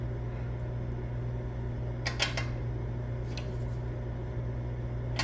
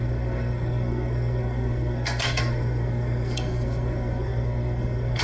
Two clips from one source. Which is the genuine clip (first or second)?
first